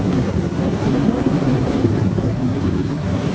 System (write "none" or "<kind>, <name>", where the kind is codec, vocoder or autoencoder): codec, SNAC